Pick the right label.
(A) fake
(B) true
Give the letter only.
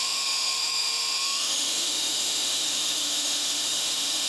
A